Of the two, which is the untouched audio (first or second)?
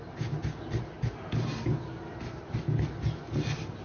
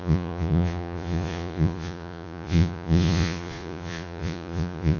first